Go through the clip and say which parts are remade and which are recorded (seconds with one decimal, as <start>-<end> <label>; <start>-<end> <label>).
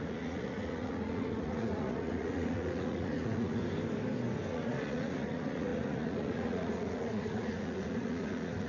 0.0-3.6 remade; 3.6-4.5 recorded; 4.5-8.7 remade